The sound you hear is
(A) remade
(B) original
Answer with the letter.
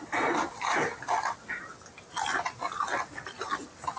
B